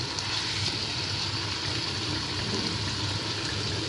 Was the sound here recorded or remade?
remade